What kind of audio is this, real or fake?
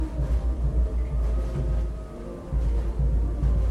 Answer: real